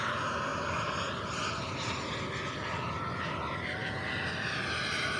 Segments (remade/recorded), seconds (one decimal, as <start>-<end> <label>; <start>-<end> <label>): 0.0-3.8 recorded; 3.8-4.3 remade; 4.3-5.2 recorded